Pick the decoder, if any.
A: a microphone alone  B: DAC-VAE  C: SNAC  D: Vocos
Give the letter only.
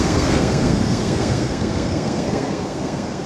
C